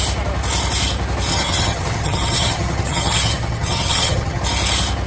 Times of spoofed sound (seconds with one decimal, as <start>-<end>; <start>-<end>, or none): 1.3-4.4